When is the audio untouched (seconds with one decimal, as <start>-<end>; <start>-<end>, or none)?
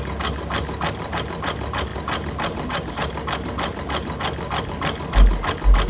0.0-5.9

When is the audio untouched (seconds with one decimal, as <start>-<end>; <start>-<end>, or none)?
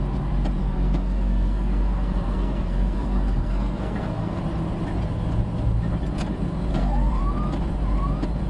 0.0-0.6; 4.4-6.7; 7.2-8.5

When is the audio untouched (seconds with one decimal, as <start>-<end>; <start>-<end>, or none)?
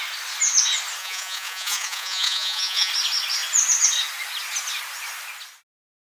0.0-1.0; 2.9-6.1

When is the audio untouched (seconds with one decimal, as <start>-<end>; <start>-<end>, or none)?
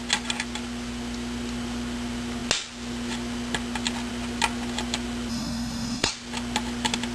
0.0-5.3; 6.1-7.1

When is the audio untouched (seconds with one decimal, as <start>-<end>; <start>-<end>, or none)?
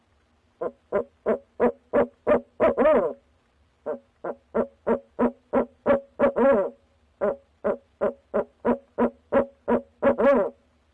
0.0-10.9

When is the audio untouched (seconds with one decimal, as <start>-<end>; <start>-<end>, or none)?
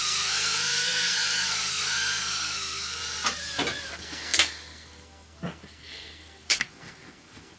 3.0-3.9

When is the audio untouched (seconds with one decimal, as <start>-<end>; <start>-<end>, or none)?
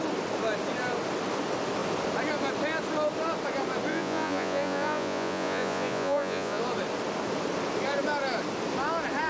0.0-3.9; 6.6-9.3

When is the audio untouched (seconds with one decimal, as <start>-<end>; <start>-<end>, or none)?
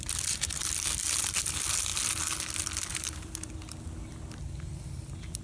0.0-2.9; 3.5-5.4